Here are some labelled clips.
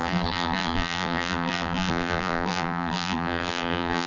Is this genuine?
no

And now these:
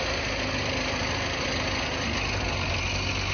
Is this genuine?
yes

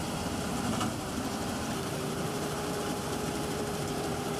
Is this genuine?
no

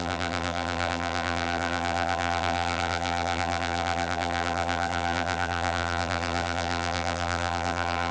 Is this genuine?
no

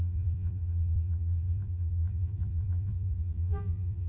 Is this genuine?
no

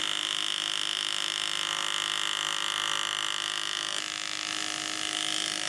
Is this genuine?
yes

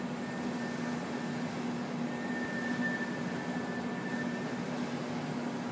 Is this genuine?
yes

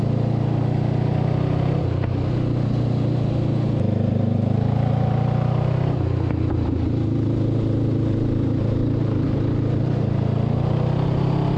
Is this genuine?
yes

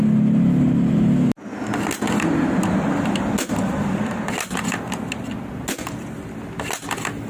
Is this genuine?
yes